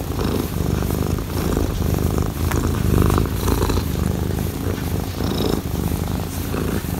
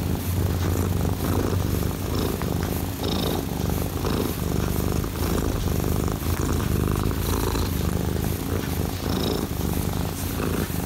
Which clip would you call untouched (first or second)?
second